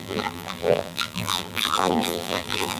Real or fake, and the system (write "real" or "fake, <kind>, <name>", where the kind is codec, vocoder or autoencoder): fake, vocoder, BigVGAN v2